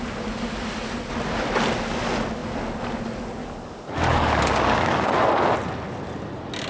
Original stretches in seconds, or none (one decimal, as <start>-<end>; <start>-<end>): 0.0-3.4; 5.1-6.7

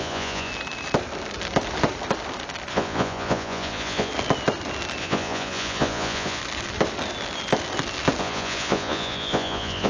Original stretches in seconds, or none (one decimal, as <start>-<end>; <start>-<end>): 0.5-2.7; 4.1-5.0; 6.4-8.2

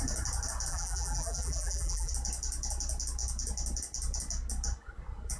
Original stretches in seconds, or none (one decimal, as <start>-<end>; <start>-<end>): 0.0-0.7; 2.1-5.4

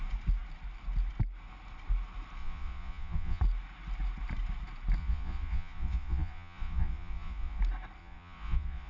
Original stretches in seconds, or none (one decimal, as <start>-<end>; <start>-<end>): 0.0-2.4; 3.4-5.0; 7.6-8.0

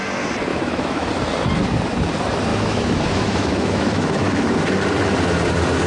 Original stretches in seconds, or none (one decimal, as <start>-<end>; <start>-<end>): 0.0-0.5; 1.1-2.5; 4.6-5.9

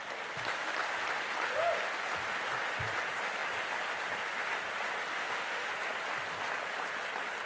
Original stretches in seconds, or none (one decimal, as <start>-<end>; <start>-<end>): 0.0-5.1; 5.7-7.5

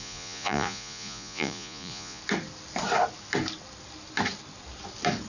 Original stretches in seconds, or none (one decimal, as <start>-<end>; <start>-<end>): 2.2-5.3